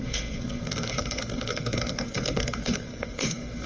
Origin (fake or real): fake